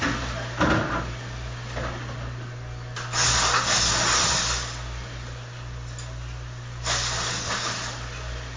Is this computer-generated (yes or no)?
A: no